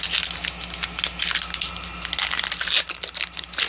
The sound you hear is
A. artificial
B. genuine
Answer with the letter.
B